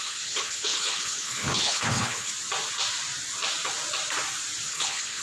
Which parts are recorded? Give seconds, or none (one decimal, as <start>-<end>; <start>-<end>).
2.3-4.7